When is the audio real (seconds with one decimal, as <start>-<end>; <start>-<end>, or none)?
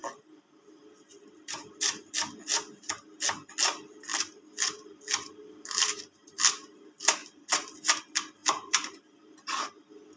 0.0-8.4; 9.0-10.2